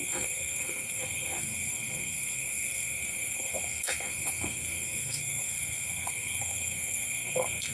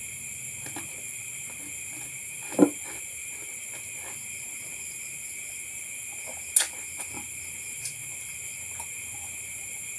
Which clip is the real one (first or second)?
second